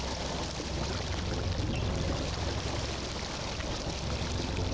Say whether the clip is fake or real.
real